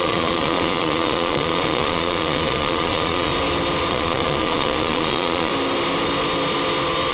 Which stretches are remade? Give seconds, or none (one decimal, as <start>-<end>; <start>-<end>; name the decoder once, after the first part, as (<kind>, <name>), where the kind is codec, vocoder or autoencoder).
0.0-3.3 (vocoder, Vocos); 3.9-5.5